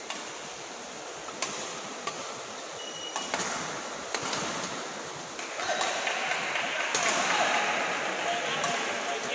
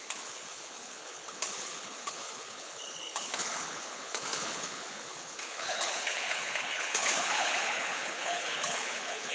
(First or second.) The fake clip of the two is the second